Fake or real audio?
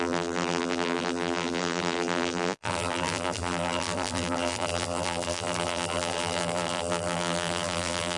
fake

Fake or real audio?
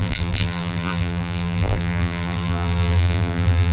fake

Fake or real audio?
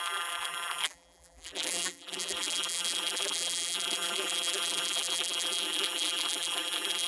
fake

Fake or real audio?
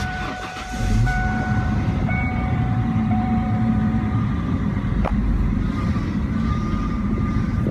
fake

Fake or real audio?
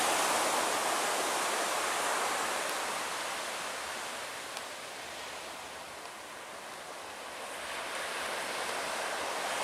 real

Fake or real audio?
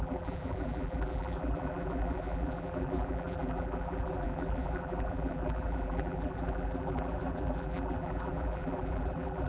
fake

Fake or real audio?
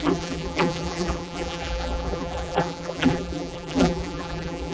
fake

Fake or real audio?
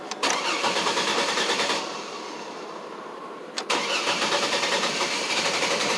fake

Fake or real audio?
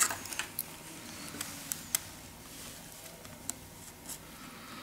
real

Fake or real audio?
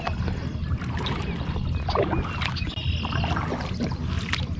real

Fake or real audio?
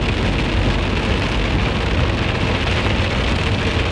real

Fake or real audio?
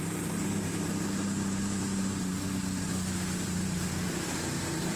fake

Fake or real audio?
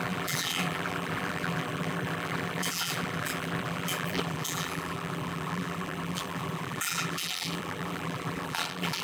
fake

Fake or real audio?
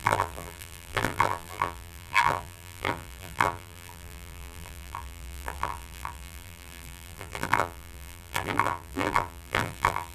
fake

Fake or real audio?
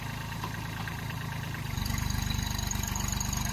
fake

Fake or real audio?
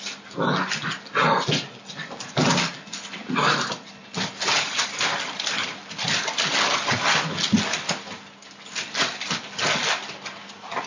real